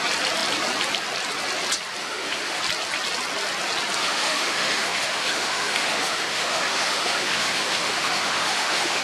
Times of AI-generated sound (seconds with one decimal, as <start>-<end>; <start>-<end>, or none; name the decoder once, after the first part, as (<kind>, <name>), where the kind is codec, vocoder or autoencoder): 2.0-2.6 (autoencoder, DAC-VAE); 4.0-9.0